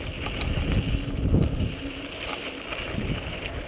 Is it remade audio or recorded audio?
recorded